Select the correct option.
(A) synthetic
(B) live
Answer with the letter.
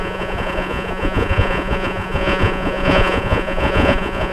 A